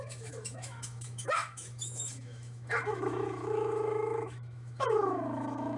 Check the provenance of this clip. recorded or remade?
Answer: remade